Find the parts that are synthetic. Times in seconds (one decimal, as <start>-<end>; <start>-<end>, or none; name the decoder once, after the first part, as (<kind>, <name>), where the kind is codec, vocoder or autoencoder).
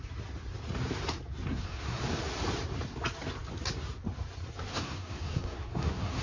1.5-2.0 (codec, SNAC); 4.7-6.2